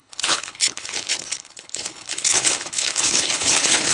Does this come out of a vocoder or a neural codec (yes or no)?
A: yes